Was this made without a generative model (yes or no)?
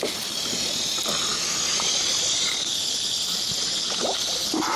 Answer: yes